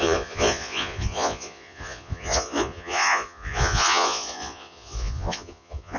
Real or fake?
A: fake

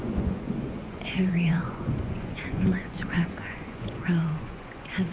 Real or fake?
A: fake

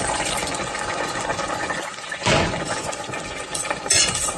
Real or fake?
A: fake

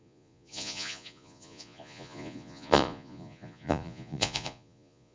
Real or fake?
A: fake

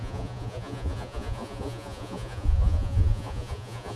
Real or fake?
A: fake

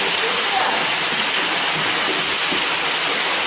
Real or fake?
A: real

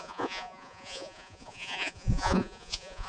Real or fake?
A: fake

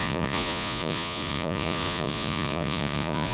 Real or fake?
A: fake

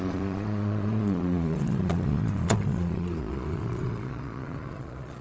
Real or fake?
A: fake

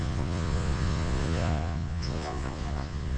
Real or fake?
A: fake